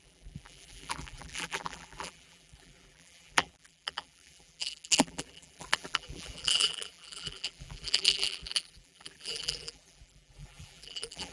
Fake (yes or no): yes